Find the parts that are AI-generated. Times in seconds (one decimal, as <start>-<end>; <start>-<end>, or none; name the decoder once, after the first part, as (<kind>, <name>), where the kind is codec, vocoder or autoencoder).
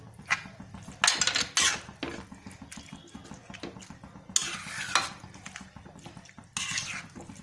none